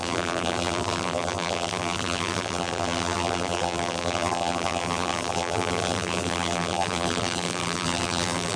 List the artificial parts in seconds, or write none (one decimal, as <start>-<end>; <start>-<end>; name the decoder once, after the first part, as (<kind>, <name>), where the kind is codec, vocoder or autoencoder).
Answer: 0.0-8.6 (vocoder, BigVGAN v2)